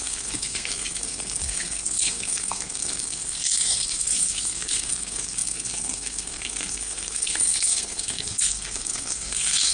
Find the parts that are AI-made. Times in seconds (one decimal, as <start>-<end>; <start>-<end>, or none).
0.0-9.7